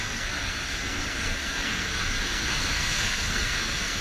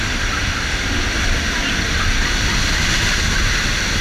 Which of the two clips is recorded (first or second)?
second